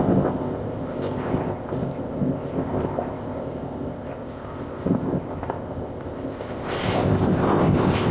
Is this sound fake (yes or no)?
yes